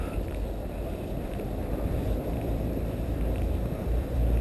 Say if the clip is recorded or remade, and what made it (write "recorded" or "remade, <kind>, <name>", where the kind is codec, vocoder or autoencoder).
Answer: remade, vocoder, BigVGAN v2